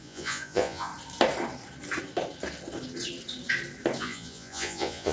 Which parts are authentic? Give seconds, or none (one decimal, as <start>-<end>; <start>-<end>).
0.9-4.0

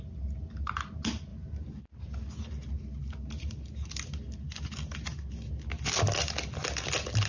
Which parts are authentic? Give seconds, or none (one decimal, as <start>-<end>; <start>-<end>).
0.0-7.3

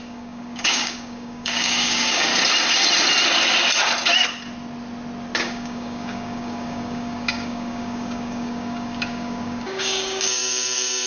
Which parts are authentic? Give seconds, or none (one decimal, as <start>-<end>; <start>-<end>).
2.3-5.4

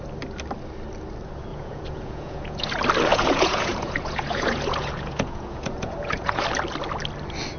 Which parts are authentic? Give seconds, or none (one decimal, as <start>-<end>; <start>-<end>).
0.0-1.5; 2.7-3.1; 6.4-7.6

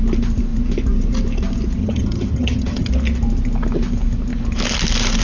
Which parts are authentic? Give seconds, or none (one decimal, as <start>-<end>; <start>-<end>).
0.0-1.8; 2.9-5.2

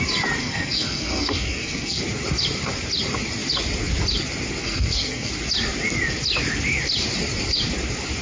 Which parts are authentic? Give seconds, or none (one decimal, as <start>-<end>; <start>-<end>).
0.0-0.4; 2.0-4.6; 5.3-8.2

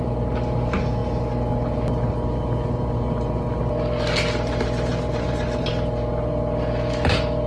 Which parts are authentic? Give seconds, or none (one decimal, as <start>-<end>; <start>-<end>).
0.0-4.9; 5.7-7.5